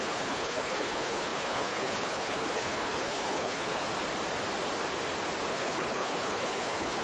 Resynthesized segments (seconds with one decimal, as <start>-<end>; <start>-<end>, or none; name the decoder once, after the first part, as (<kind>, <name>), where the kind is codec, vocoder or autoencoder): 0.0-3.9 (codec, HILCodec); 5.5-7.0